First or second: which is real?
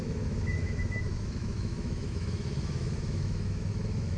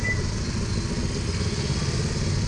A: second